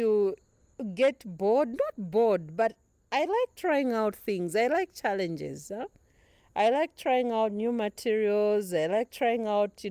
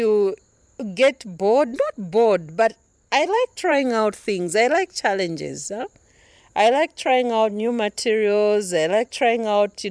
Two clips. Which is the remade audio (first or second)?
second